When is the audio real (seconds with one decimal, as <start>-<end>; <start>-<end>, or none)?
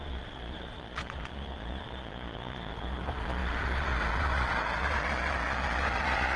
none